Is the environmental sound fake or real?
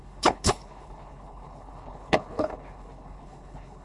fake